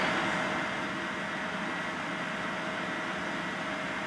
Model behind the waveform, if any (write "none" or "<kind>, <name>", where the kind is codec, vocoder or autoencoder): none